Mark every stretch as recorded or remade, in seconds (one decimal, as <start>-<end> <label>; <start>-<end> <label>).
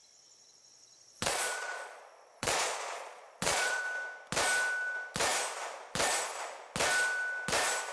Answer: 0.0-3.8 remade; 3.8-7.9 recorded